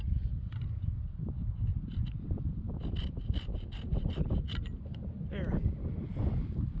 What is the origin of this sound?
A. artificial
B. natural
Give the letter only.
B